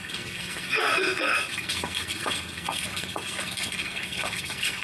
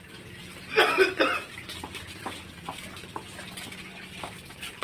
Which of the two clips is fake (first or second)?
first